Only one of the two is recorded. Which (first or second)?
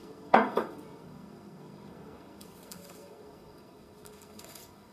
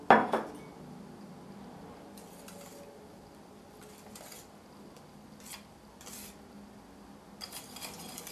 second